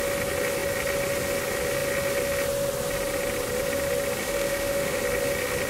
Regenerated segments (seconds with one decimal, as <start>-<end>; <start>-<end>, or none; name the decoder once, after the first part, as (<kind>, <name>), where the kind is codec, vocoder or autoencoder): 4.2-5.0 (autoencoder, DAC-VAE)